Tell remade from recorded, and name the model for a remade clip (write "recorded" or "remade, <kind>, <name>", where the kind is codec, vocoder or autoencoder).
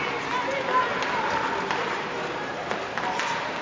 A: recorded